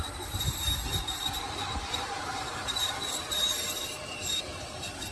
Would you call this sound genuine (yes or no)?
no